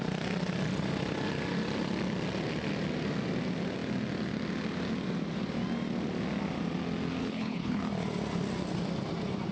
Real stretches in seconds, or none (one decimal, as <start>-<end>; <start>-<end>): 0.0-7.2; 7.8-9.5